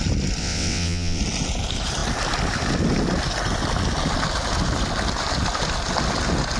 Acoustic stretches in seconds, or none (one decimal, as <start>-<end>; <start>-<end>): 0.0-0.4; 1.2-6.6